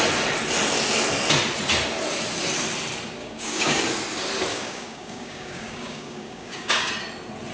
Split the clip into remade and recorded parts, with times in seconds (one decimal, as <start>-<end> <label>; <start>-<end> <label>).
0.0-3.2 recorded; 3.2-3.8 remade; 3.8-4.5 recorded; 4.5-6.9 remade; 6.9-7.5 recorded